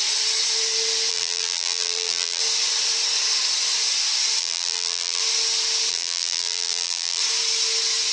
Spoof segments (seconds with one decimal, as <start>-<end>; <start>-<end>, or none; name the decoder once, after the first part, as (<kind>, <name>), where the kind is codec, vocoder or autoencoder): 1.1-2.4 (vocoder, BigVGAN v2); 4.4-5.2; 5.9-7.2